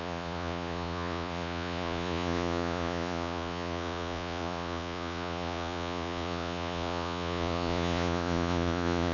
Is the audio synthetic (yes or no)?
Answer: yes